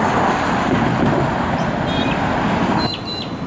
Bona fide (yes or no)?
yes